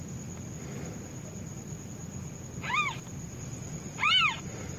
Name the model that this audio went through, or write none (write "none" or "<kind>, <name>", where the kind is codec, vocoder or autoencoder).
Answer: none